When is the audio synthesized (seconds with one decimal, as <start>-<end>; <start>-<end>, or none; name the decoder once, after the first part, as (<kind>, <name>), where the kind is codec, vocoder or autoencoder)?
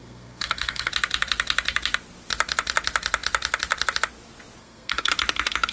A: 0.0-0.9 (codec, SNAC); 4.6-5.1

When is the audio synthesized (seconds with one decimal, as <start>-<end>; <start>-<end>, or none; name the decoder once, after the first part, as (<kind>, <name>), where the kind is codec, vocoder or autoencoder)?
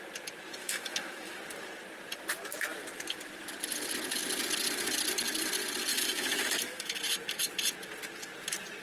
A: 0.6-1.4 (autoencoder, DAC-VAE); 5.9-7.0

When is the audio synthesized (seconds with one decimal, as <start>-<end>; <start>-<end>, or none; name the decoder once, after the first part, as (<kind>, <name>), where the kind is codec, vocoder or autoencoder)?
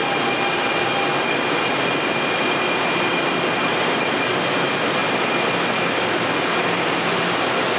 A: none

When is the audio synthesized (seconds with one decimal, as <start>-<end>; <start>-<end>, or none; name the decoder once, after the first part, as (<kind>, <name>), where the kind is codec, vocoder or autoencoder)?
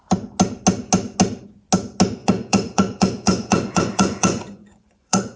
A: 2.2-5.4 (vocoder, Vocos)